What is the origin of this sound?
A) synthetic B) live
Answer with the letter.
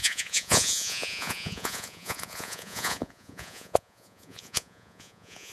A